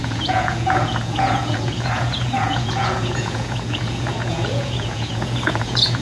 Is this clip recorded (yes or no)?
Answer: no